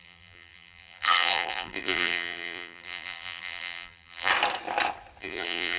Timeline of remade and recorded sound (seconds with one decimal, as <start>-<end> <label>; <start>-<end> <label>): 0.0-4.3 remade; 4.3-5.2 recorded; 5.2-5.8 remade